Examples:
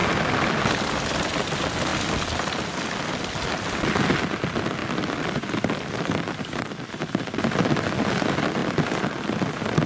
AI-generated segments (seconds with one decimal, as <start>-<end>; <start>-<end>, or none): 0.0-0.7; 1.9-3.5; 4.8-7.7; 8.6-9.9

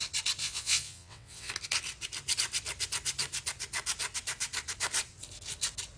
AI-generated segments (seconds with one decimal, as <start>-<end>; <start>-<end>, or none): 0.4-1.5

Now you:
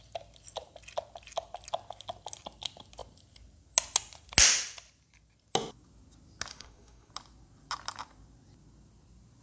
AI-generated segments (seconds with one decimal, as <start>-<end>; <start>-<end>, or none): 6.5-7.1

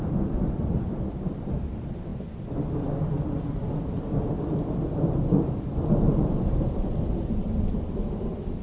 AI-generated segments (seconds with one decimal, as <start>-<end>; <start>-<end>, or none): 0.0-8.6

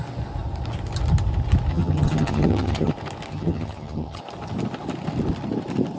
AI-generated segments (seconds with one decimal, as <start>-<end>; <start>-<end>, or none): 1.7-2.9; 3.3-4.2